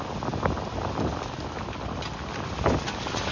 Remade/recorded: recorded